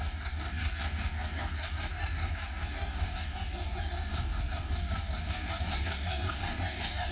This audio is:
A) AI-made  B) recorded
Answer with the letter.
A